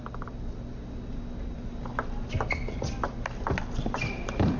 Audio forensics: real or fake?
real